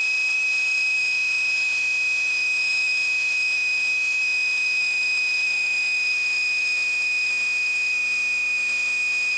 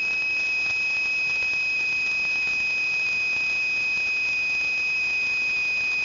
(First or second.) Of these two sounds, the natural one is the second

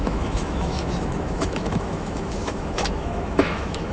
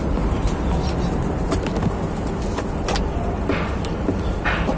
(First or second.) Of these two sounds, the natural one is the second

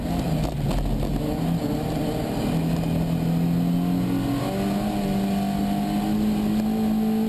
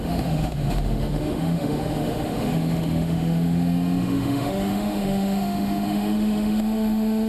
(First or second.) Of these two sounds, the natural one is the first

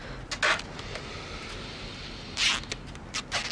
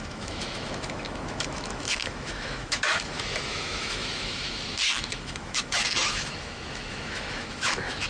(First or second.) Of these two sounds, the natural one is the first